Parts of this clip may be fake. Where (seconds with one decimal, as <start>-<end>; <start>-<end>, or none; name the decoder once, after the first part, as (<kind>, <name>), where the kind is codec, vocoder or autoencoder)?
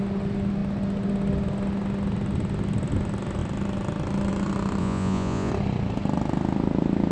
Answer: 4.8-5.5 (vocoder, Vocos)